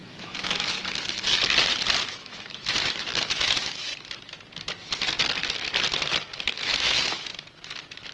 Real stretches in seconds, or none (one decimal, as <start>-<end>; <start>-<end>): 0.8-2.1; 3.9-6.5; 7.3-8.1